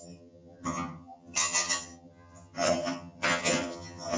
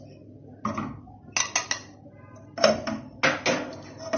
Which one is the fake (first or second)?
first